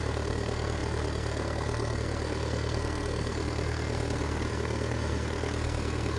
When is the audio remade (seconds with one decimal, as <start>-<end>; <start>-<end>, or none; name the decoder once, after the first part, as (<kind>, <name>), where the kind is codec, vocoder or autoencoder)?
0.0-6.2 (codec, SNAC)